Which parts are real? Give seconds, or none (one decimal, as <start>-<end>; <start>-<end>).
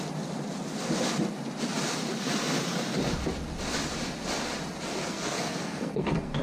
0.0-5.0